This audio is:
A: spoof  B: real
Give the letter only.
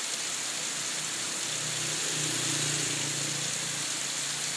B